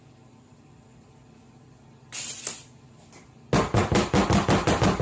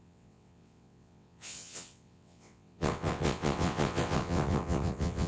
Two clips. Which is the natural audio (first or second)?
first